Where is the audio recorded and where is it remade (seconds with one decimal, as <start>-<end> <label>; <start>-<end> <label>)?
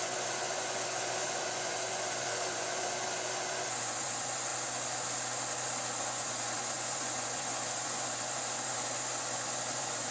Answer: 0.0-4.5 remade; 4.5-6.0 recorded; 6.0-10.1 remade